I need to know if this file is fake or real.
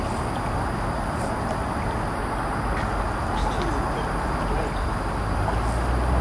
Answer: real